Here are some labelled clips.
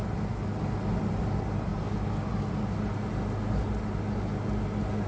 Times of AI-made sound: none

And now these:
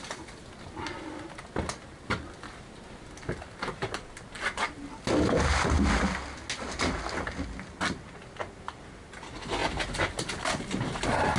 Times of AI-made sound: none

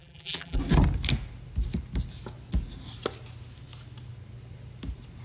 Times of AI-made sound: 0.0-0.6 (vocoder, BigVGAN v2)

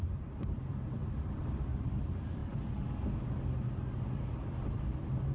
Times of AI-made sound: 0.0-1.0 (vocoder, BigVGAN v2); 1.6-2.4; 4.8-5.3

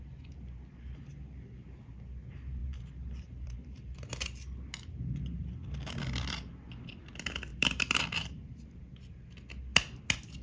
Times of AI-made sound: 2.6-4.1 (vocoder, BigVGAN v2); 7.5-8.7

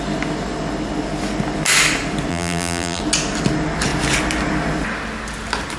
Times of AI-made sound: 2.3-3.0 (vocoder, BigVGAN v2)

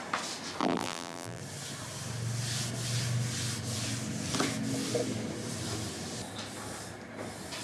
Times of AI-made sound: 0.6-1.4 (vocoder, BigVGAN v2)